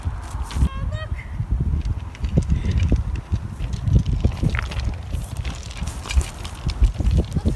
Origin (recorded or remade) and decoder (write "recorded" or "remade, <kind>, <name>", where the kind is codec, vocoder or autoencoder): recorded